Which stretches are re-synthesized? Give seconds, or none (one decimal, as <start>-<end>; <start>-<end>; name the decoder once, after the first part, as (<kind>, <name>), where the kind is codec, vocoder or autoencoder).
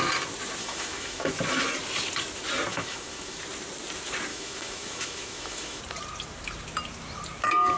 0.6-1.3 (autoencoder, DAC-VAE); 2.7-3.4; 4.3-5.8